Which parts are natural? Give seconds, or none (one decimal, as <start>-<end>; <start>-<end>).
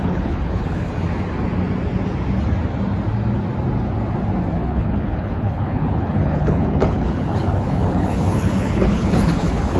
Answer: 0.9-4.6